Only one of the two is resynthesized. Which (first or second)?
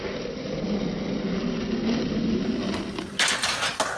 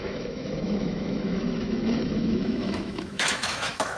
second